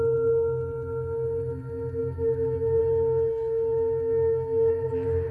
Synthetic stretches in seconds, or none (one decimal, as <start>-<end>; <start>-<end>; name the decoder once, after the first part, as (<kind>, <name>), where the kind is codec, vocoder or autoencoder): 2.0-2.8 (autoencoder, DAC-VAE)